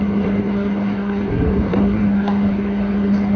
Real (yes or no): no